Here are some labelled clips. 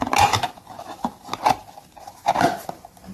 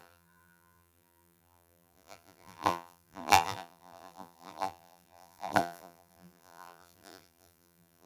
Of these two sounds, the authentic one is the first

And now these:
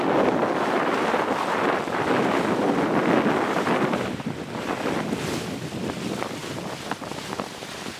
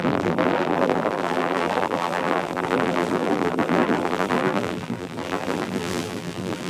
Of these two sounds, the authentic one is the first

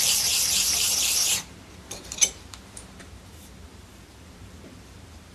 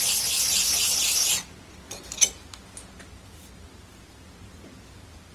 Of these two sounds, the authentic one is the second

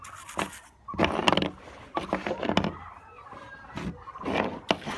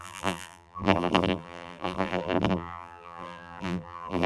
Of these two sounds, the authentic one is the first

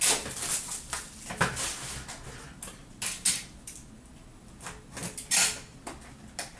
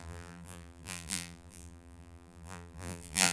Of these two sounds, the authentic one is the first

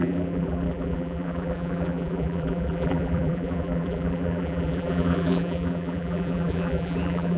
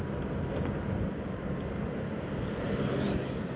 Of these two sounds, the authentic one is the second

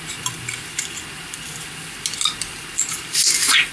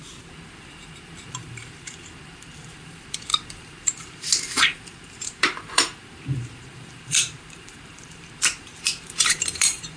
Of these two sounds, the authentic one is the first